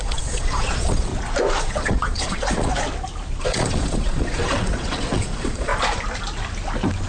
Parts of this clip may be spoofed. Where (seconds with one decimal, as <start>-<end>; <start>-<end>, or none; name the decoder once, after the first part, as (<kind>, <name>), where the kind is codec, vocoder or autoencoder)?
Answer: 0.0-1.1 (vocoder, Vocos); 1.6-2.7; 3.4-5.7